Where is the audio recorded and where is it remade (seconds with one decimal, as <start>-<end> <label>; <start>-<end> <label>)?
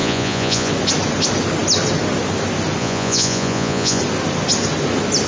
0.0-0.7 remade; 0.7-2.8 recorded; 2.8-4.0 remade; 4.0-5.3 recorded